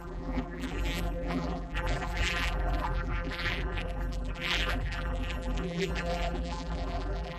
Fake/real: fake